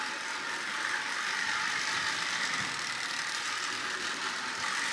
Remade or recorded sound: remade